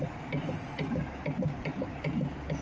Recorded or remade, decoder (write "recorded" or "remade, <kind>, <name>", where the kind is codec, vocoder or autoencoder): recorded